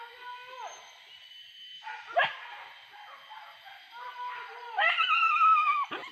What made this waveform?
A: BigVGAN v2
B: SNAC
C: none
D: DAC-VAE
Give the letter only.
C